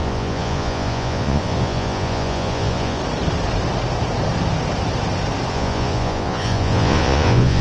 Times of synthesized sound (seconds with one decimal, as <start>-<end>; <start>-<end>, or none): 0.0-3.0; 5.5-7.6